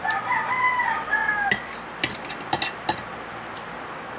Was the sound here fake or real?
real